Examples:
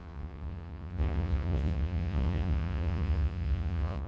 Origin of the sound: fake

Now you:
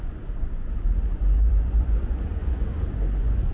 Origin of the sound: fake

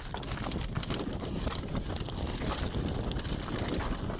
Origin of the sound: real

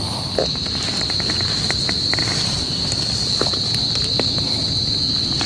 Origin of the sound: real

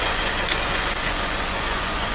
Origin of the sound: fake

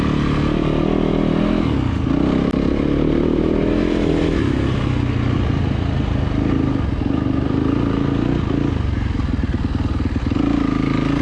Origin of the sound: real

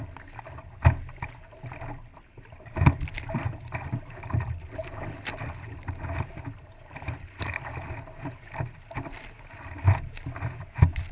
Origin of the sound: real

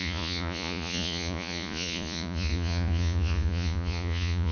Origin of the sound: fake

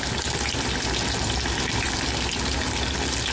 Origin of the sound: real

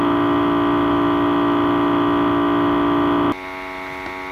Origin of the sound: real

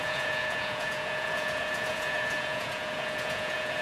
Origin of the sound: fake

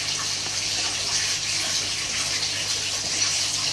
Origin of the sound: real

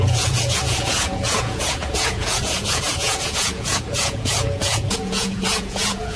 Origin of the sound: fake